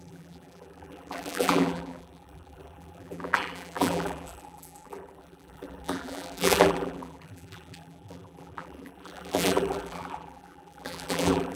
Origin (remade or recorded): remade